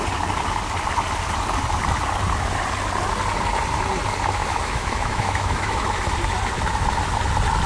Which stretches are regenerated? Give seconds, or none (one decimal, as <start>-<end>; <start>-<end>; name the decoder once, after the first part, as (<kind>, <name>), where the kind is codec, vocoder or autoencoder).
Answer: 4.4-6.0 (autoencoder, DAC-VAE)